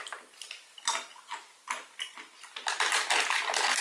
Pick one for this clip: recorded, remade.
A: recorded